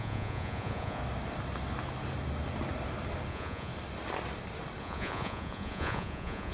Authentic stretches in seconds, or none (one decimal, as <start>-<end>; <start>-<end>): 1.0-3.3; 3.7-4.8